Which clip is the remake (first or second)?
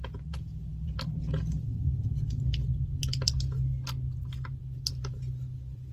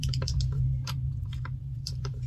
second